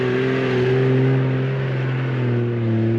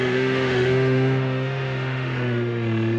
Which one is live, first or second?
first